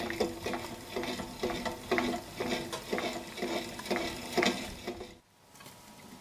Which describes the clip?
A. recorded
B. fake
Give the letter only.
A